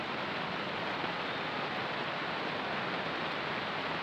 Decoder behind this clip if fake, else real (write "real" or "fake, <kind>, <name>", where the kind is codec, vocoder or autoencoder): real